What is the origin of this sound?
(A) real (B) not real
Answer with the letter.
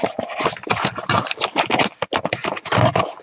A